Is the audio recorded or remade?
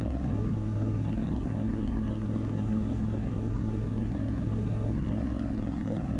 remade